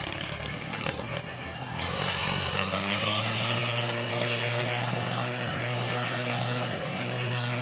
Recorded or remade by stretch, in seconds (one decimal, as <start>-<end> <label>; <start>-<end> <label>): 0.0-7.6 remade